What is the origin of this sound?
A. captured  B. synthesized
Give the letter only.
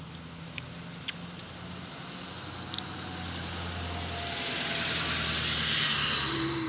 A